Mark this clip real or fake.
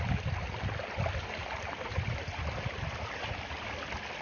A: real